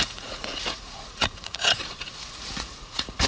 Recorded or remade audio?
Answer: remade